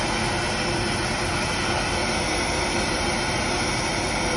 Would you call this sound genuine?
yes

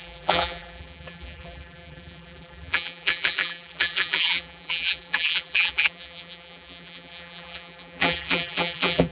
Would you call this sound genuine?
no